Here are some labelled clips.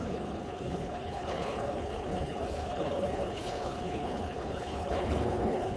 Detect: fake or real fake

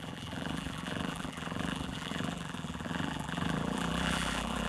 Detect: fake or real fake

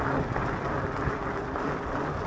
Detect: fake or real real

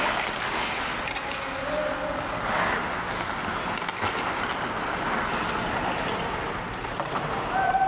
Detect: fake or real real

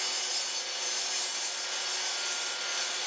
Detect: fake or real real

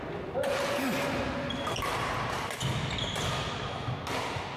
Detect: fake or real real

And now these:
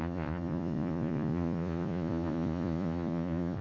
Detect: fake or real fake